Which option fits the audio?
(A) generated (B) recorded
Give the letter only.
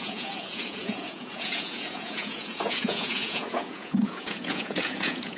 A